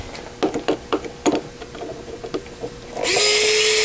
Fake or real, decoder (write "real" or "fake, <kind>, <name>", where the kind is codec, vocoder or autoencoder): real